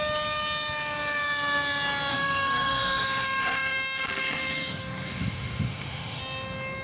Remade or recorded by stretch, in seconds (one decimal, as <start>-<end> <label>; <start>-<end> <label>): 0.0-2.1 recorded; 2.1-6.2 remade; 6.2-6.8 recorded